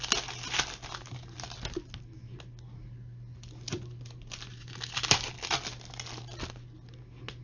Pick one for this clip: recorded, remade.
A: recorded